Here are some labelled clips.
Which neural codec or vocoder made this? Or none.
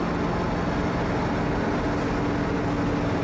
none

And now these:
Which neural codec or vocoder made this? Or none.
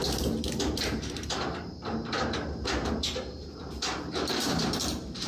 vocoder, BigVGAN v2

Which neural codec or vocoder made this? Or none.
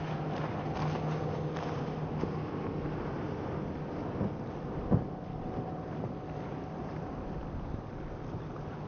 none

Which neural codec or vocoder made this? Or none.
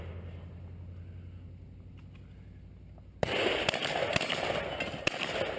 none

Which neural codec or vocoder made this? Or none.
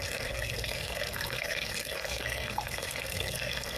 codec, SNAC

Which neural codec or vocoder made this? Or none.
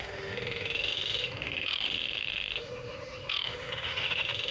autoencoder, DAC-VAE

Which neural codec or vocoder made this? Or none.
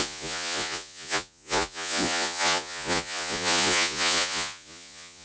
vocoder, Vocos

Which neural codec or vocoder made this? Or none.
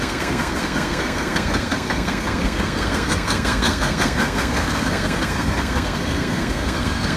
codec, SNAC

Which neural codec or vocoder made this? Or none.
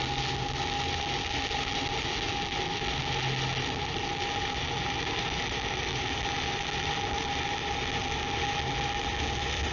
none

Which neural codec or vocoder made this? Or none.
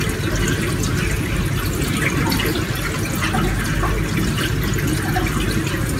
none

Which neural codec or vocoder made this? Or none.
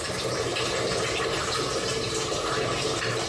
vocoder, BigVGAN v2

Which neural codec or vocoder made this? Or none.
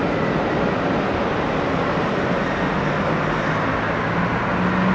none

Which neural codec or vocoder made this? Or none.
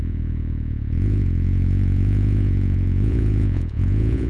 vocoder, Vocos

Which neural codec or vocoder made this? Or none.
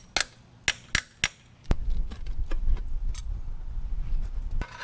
none